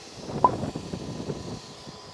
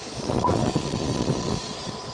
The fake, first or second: second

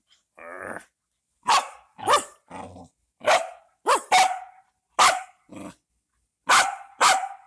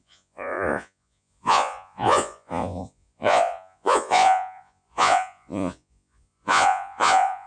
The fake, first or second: second